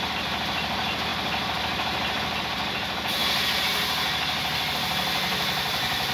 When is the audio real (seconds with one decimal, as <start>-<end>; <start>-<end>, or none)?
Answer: 3.2-4.7